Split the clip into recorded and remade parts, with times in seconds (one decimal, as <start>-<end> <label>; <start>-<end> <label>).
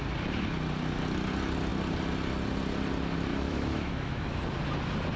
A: 0.0-3.3 recorded; 3.3-4.4 remade; 4.4-5.2 recorded